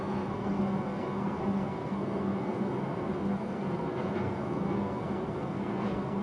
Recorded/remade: remade